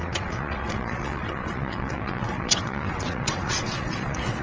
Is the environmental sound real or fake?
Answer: fake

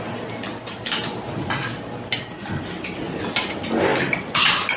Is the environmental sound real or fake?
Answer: real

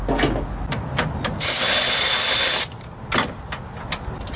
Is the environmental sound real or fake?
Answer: real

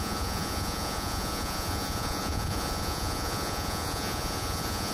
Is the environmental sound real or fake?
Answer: fake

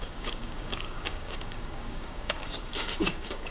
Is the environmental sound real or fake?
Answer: fake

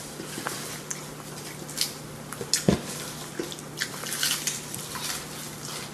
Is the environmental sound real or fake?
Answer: real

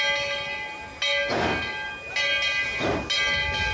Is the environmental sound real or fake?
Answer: real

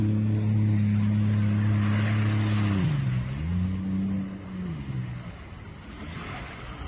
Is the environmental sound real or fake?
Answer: real